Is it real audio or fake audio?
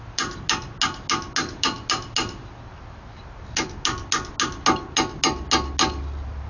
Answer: real